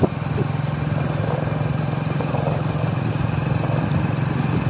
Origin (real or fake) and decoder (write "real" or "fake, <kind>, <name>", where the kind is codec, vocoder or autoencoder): real